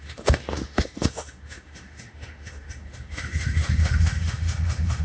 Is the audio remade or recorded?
remade